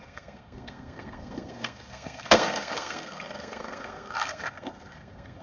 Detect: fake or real fake